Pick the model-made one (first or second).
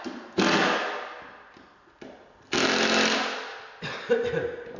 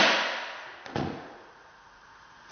second